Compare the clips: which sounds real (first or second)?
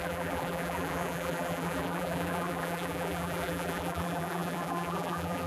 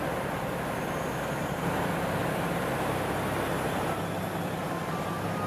second